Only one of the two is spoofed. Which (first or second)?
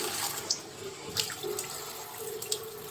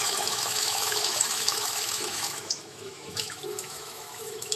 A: second